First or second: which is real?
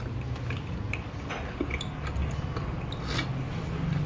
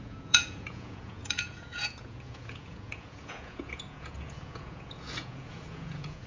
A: first